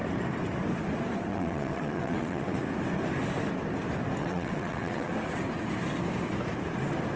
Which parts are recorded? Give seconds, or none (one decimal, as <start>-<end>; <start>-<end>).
0.0-1.3; 2.6-4.2; 5.1-7.2